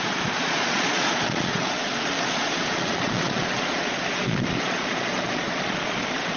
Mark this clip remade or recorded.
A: remade